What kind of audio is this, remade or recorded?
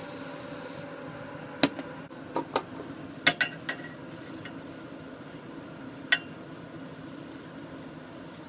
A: recorded